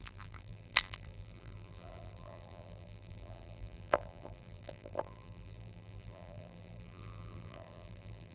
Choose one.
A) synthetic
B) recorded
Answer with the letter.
A